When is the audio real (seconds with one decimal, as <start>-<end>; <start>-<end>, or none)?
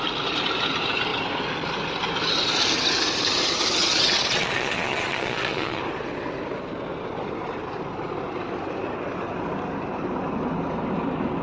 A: 0.0-3.8; 5.8-11.4